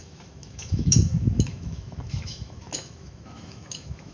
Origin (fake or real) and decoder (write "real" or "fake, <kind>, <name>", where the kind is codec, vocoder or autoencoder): fake, autoencoder, DAC-VAE